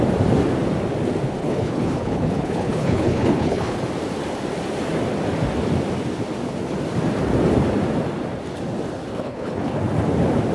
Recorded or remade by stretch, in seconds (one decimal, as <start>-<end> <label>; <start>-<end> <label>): 0.0-1.4 recorded; 1.4-3.8 remade; 3.8-9.1 recorded; 9.1-9.8 remade; 9.8-10.5 recorded